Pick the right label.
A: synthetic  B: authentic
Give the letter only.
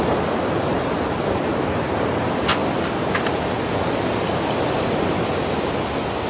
B